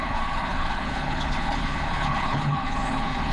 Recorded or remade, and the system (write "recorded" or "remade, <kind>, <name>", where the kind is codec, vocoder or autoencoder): remade, codec, HILCodec